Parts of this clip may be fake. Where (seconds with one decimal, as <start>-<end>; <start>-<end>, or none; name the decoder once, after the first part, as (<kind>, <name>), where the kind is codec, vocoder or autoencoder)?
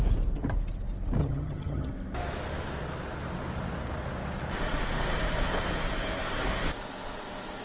1.2-1.9 (vocoder, HiFi-GAN)